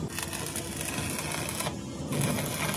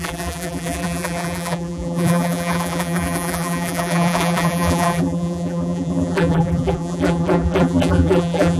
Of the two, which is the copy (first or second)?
second